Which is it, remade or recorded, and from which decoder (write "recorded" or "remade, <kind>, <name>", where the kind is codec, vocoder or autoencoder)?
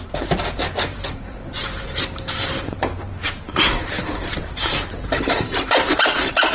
remade, vocoder, BigVGAN v2